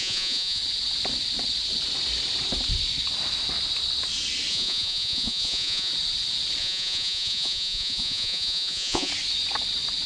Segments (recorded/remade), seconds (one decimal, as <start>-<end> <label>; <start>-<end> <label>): 0.0-0.6 remade; 0.6-4.5 recorded; 4.5-5.9 remade; 5.9-6.6 recorded; 6.6-9.1 remade; 9.1-10.1 recorded